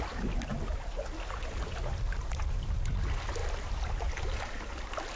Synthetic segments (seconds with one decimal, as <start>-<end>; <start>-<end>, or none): none